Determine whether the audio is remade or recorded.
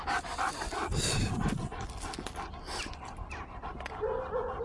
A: recorded